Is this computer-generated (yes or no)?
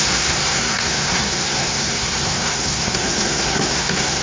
yes